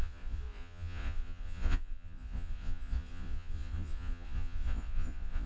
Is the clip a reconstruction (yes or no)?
yes